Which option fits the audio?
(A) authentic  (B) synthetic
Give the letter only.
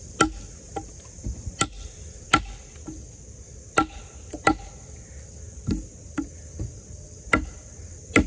A